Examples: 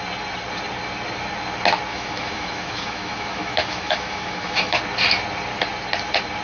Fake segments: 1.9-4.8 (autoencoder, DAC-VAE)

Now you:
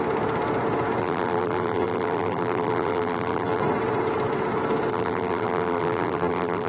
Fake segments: 1.0-3.6 (vocoder, BigVGAN v2); 4.9-6.7

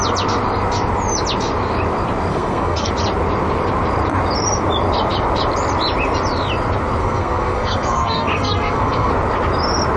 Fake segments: 2.3-2.9 (codec, SNAC); 7.0-9.1

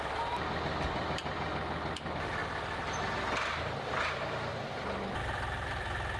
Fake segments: 0.0-2.4 (vocoder, BigVGAN v2); 3.8-4.5; 5.2-6.2

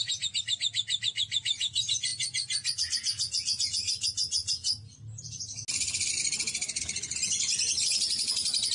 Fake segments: none

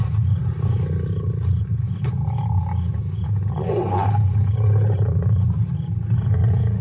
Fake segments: none

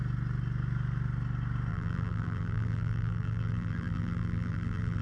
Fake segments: 1.7-5.0 (vocoder, BigVGAN v2)

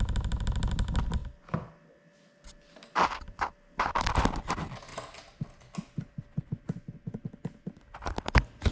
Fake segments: none